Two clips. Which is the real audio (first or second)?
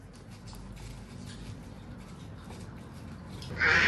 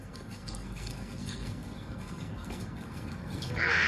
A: first